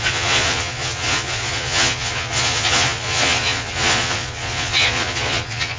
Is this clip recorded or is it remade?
remade